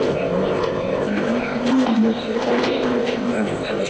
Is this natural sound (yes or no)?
no